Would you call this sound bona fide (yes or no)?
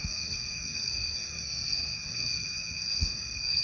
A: no